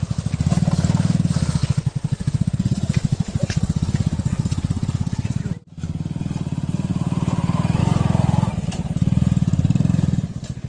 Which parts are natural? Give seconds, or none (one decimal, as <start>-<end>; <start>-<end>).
0.0-1.6; 5.4-10.7